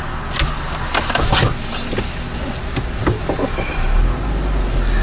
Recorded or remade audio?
recorded